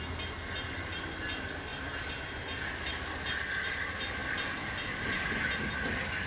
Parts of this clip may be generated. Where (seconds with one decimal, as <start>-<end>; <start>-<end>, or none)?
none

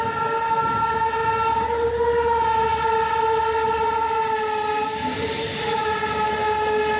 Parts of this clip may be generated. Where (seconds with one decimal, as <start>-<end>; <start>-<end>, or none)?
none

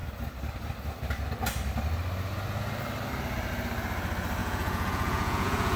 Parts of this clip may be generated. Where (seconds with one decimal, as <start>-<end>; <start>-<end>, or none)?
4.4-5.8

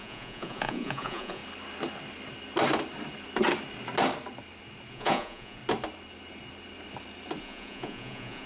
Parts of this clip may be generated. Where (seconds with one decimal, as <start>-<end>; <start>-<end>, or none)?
0.0-1.4; 4.9-5.6; 7.4-8.5

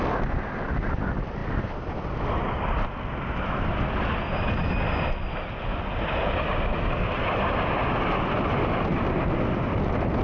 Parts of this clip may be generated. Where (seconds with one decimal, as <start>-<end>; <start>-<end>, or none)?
none

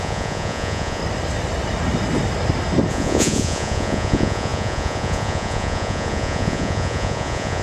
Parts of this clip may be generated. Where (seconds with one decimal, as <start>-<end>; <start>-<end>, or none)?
0.0-1.0; 2.9-7.6

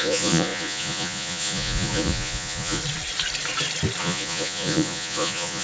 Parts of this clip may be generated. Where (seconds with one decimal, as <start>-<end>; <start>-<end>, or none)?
0.0-2.8; 4.0-5.6

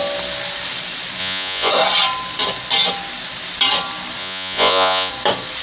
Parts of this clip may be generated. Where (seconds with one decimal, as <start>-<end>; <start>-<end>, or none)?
1.2-1.7; 4.2-5.1